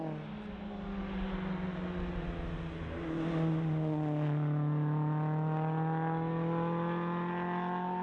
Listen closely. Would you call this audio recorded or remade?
recorded